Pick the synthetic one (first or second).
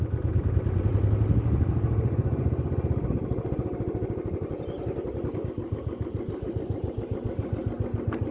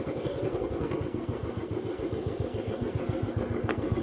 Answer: second